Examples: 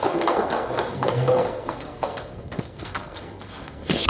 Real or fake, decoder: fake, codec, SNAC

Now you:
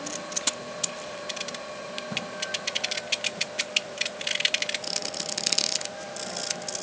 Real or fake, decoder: real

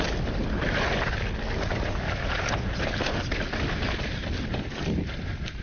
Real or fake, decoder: real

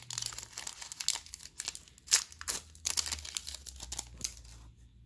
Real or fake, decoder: real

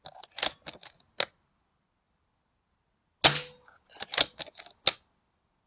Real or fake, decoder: real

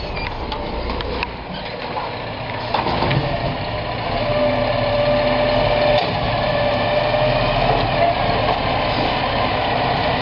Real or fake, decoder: real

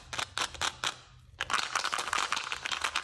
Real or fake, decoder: real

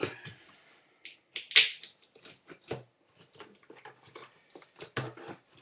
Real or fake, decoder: real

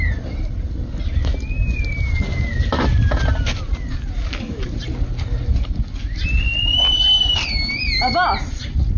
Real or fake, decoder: real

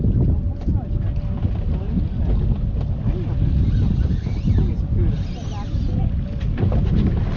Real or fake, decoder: real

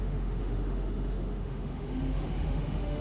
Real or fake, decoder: fake, autoencoder, DAC-VAE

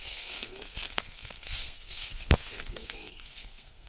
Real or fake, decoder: fake, codec, SNAC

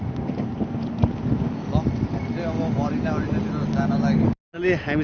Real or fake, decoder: real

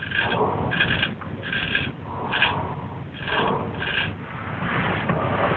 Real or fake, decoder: real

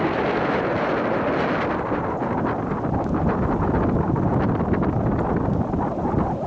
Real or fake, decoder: real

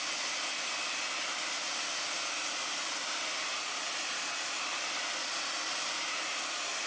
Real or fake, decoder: real